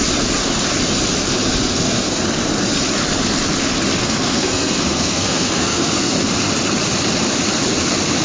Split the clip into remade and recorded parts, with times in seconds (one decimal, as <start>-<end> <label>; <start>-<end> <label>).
0.0-1.7 recorded; 1.7-2.2 remade; 2.2-4.0 recorded; 4.0-6.1 remade; 6.1-8.2 recorded